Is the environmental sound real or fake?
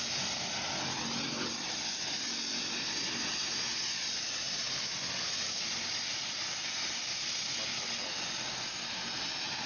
real